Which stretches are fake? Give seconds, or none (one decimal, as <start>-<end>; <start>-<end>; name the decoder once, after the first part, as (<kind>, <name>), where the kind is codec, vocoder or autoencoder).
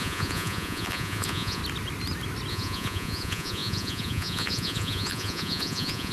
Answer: 0.0-1.6 (vocoder, Vocos); 2.5-6.1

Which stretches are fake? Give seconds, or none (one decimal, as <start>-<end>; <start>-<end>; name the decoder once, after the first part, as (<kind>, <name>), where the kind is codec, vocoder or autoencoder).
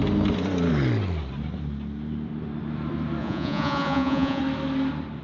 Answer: 3.2-4.4 (vocoder, Vocos)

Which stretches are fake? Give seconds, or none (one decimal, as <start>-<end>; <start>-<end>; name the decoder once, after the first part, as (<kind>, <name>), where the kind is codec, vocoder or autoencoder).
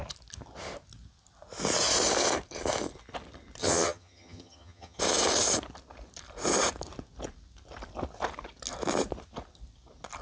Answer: 3.6-5.0 (vocoder, HiFi-GAN)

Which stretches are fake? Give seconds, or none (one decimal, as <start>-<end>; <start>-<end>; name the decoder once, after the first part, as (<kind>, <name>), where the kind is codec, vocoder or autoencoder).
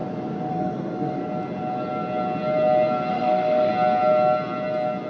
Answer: 0.5-1.2 (codec, SNAC); 3.1-3.7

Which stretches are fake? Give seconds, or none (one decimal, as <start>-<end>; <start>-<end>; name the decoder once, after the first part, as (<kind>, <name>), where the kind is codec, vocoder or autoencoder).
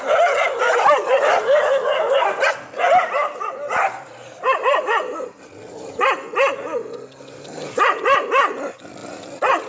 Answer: none